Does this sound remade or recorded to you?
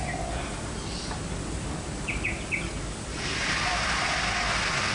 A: recorded